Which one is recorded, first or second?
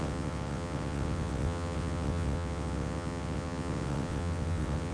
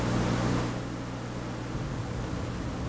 second